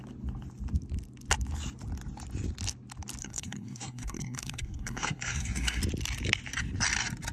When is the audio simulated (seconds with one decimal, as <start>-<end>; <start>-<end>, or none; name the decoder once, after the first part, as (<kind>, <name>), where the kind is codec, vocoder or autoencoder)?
3.2-5.8 (codec, SNAC)